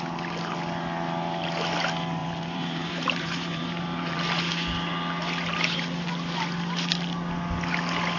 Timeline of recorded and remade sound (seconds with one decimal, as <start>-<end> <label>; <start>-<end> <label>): 0.0-2.2 recorded; 2.2-4.2 remade; 4.2-8.2 recorded